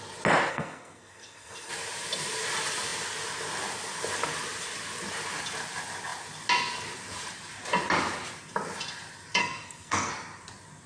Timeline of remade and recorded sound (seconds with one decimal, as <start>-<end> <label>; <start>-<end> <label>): 0.0-0.5 recorded; 0.5-1.7 remade; 1.7-9.4 recorded; 9.4-10.1 remade; 10.1-10.9 recorded